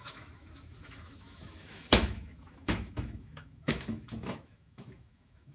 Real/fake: fake